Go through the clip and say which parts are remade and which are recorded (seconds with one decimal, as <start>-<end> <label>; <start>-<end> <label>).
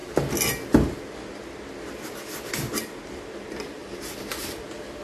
0.0-3.8 recorded; 3.8-4.6 remade; 4.6-5.0 recorded